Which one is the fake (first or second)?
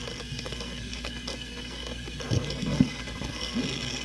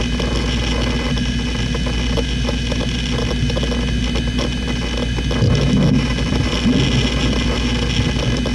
first